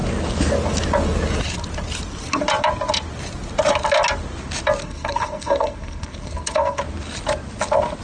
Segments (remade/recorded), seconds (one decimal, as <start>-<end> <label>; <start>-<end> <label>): 0.0-4.8 recorded; 4.8-6.8 remade; 6.8-8.0 recorded